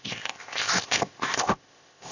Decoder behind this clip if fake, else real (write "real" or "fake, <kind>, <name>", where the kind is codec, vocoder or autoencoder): fake, codec, ZipCodec